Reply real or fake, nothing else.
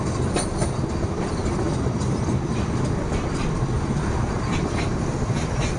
real